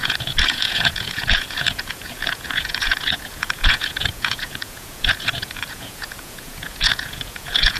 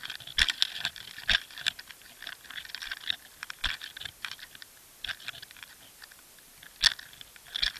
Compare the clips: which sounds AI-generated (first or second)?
first